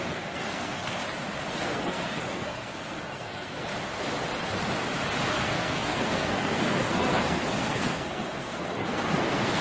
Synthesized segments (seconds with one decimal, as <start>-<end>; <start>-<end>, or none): 0.0-1.0; 1.5-3.7; 5.3-9.6

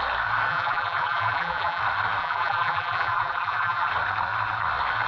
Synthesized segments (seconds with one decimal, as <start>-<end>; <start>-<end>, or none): 0.5-1.8; 2.2-3.9

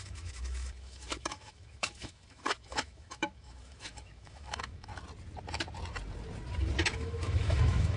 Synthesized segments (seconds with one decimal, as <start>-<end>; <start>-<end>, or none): 0.0-4.9; 6.9-8.0

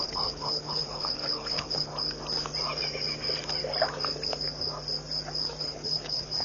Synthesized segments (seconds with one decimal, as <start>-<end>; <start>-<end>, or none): 0.0-1.9; 5.6-6.4

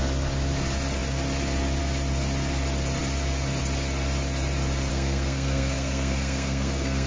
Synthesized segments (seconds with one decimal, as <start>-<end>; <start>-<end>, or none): 4.9-7.1

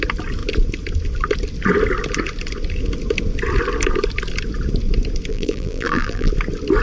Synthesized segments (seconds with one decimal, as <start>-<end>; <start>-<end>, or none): 5.3-6.3

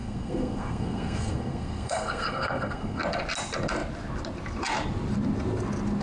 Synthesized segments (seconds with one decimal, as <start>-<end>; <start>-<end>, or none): 0.0-3.0